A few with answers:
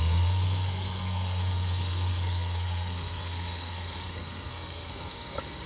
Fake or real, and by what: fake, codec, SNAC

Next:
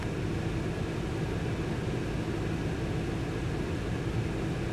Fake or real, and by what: real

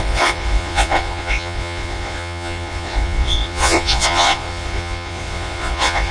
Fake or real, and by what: fake, vocoder, Vocos